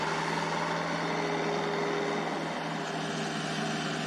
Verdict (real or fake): real